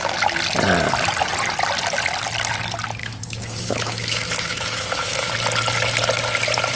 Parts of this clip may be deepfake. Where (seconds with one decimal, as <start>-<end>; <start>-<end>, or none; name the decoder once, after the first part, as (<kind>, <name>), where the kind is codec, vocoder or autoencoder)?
3.0-5.3 (autoencoder, DAC-VAE)